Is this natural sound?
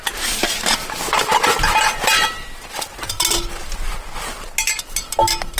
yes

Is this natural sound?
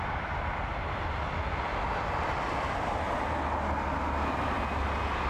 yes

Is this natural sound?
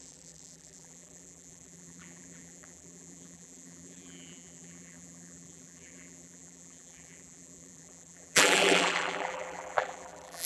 no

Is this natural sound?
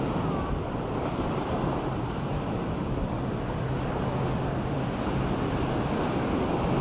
no